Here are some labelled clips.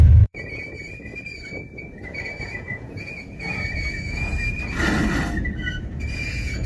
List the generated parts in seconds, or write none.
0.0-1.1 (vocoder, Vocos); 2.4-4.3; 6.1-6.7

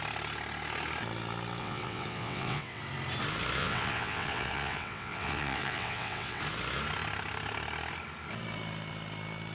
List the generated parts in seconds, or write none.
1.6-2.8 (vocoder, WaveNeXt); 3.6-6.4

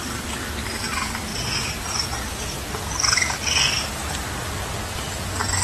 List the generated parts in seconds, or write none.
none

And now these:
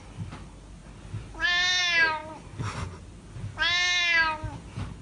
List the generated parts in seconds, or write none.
none

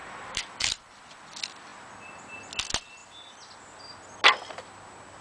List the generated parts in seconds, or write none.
0.0-0.7 (vocoder, BigVGAN v2)

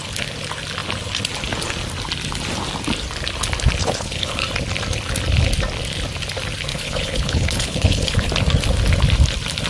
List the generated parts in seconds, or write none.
3.8-4.4 (codec, HILCodec); 6.7-8.3

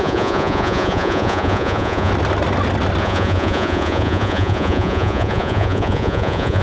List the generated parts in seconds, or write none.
0.0-2.1 (vocoder, Vocos); 3.0-6.6